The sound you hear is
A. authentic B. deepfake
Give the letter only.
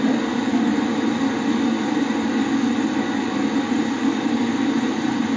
B